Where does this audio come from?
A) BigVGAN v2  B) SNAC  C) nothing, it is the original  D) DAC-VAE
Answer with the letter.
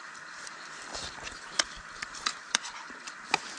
C